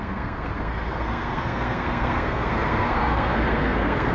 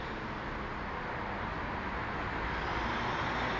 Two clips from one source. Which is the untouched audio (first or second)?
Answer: second